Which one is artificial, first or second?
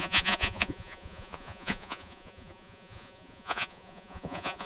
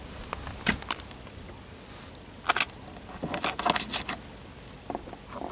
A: first